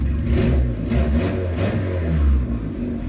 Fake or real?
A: real